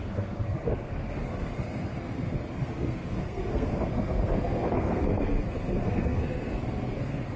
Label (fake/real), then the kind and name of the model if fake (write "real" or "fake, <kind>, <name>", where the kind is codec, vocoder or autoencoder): fake, codec, SNAC